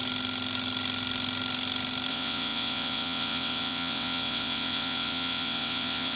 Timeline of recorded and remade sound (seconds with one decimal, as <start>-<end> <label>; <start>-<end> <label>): 0.0-2.1 recorded; 2.1-6.2 remade